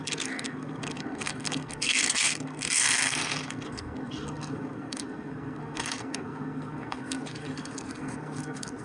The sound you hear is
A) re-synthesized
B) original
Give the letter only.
A